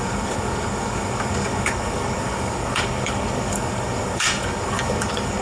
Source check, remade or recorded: remade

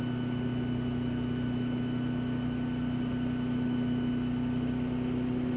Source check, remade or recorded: recorded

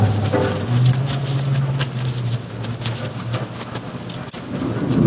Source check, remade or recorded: recorded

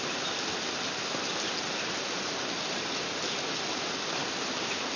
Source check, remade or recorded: recorded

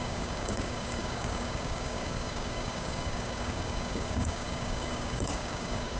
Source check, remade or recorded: remade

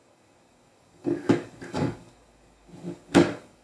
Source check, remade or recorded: remade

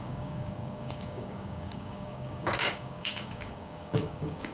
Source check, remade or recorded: remade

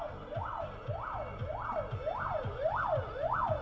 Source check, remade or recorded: recorded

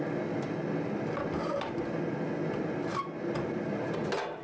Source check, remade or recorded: recorded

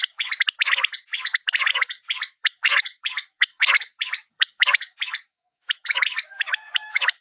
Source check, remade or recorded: remade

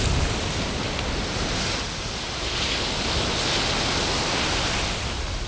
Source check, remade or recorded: recorded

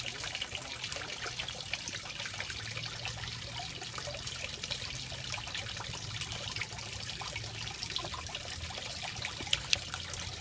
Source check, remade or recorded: recorded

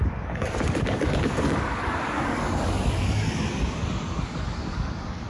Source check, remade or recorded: remade